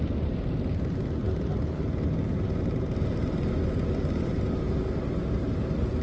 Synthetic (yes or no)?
no